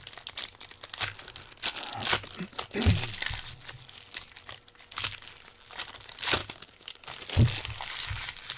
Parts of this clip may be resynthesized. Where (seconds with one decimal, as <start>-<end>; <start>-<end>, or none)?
6.4-7.0